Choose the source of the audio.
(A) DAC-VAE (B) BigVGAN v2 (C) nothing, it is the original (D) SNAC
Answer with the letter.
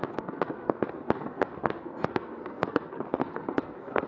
D